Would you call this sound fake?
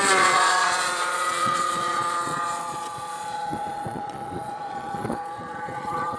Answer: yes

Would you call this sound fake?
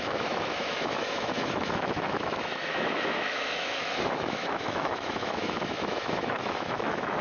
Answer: yes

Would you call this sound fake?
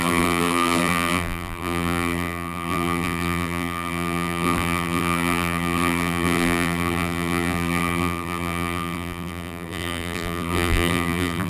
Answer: yes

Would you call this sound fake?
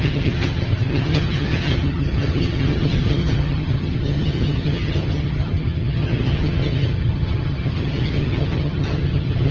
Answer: yes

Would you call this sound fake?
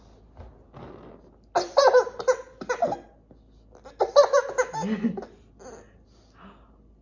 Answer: no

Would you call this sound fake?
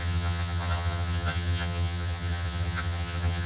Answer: yes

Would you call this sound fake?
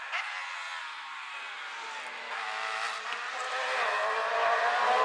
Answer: no